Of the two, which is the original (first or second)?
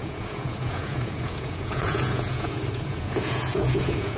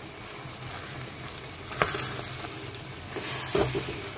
second